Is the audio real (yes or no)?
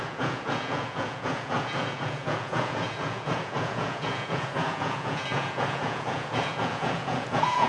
no